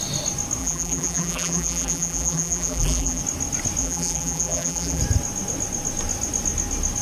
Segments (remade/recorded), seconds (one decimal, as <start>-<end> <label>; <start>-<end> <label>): 0.0-0.6 recorded; 0.6-3.2 remade; 3.2-3.8 recorded; 3.8-5.0 remade; 5.0-7.0 recorded